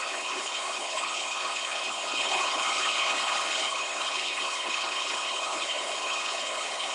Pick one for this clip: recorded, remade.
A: remade